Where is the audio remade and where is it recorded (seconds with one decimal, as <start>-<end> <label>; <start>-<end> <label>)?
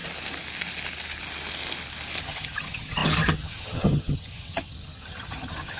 0.0-2.2 recorded; 2.2-5.8 remade